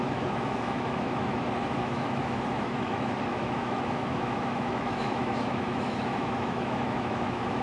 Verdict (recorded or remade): remade